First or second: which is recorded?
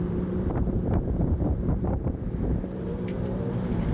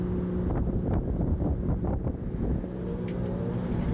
second